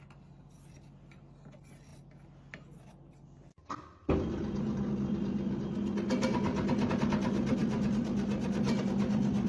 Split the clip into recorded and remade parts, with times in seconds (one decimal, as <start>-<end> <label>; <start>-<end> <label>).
0.0-9.5 recorded